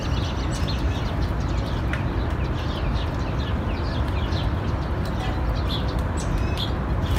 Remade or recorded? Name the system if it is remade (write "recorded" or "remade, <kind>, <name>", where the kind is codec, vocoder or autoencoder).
recorded